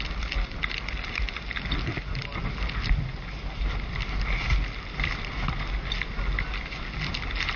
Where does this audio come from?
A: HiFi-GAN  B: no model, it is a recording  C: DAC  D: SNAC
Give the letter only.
B